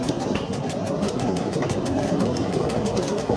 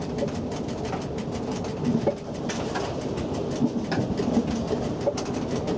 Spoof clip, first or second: first